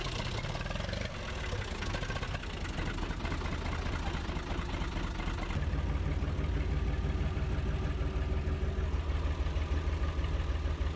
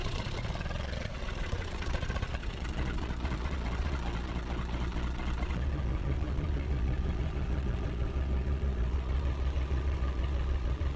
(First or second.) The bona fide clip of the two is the first